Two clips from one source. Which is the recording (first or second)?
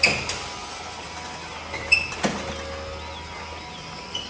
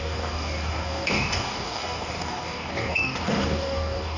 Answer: first